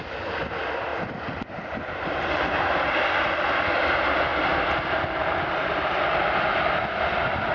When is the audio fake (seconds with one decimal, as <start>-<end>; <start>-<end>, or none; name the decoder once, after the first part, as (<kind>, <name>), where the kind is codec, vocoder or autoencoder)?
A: none